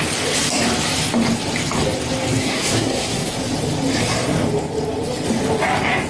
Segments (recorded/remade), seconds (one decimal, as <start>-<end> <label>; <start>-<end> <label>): 0.0-2.4 recorded; 2.4-3.3 remade; 3.3-6.1 recorded